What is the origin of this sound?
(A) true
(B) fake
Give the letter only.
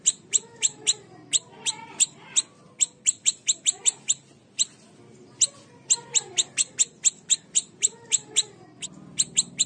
A